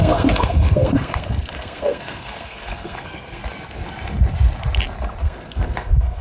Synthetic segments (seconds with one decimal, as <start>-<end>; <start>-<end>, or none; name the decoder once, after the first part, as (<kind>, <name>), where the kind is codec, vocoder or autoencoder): 0.0-3.4 (codec, SNAC); 5.2-6.2